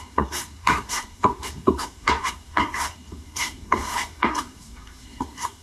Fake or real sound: fake